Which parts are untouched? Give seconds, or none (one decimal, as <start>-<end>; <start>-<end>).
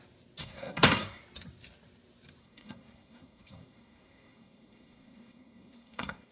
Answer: 0.0-0.4; 1.2-2.4